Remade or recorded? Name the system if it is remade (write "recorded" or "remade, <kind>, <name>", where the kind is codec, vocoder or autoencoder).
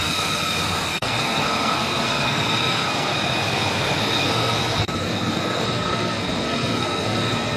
remade, codec, SNAC